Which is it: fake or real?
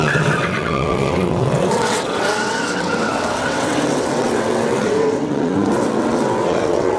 fake